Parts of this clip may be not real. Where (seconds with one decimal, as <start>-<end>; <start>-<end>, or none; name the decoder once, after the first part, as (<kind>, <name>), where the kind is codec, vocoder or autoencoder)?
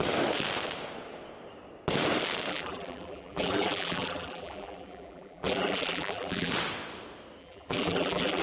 2.5-6.5 (vocoder, BigVGAN v2); 7.4-8.4